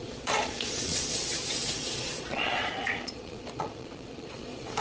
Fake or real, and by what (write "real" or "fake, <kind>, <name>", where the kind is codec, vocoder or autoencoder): fake, vocoder, Vocos